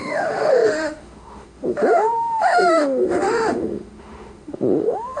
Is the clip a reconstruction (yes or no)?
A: yes